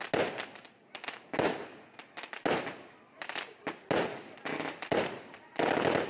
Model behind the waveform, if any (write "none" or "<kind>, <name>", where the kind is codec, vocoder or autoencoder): none